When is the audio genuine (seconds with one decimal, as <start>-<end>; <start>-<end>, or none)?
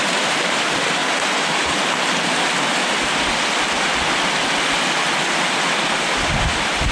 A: 0.0-6.9